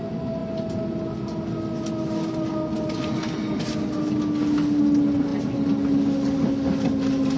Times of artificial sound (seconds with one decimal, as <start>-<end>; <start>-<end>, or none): none